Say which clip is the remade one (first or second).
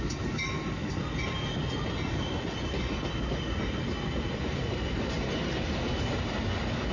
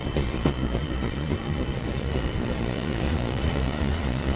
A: second